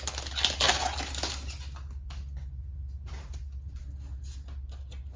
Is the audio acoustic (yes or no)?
yes